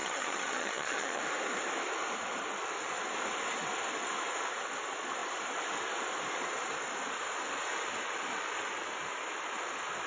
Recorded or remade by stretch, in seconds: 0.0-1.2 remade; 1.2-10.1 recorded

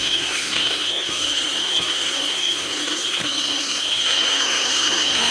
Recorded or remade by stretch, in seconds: 0.0-5.3 remade

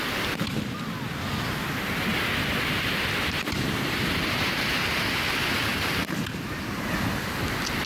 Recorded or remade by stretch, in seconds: 0.0-2.1 recorded; 2.1-4.4 remade; 4.4-7.9 recorded

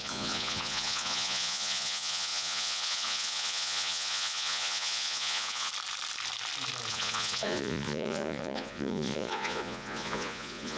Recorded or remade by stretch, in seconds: 0.0-5.7 remade; 5.7-6.9 recorded; 6.9-10.8 remade